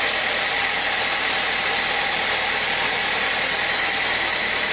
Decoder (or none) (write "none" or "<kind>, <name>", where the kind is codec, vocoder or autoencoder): none